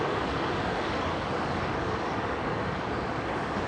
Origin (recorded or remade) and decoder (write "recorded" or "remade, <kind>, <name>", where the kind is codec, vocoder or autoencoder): remade, codec, DAC